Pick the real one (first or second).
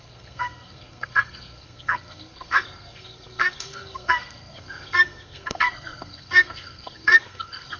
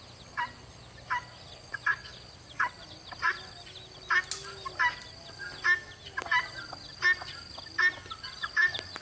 second